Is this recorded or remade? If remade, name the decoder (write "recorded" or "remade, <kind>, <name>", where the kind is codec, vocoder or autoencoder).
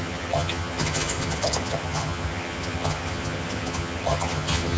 remade, vocoder, HiFi-GAN